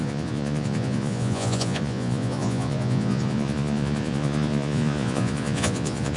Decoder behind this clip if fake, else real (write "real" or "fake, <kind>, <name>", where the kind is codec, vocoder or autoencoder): fake, vocoder, Vocos